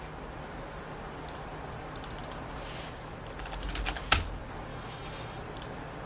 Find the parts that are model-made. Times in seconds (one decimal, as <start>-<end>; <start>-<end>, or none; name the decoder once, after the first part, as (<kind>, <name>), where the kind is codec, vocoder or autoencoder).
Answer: 4.7-5.4 (autoencoder, DAC-VAE)